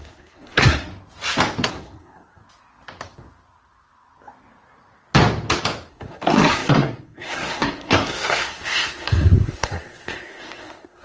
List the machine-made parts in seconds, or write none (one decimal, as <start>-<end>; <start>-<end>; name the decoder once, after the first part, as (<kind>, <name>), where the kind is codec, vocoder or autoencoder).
0.0-0.9 (codec, SNAC); 1.7-2.4; 5.9-11.0